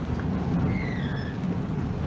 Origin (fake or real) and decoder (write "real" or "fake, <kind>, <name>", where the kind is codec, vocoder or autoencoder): real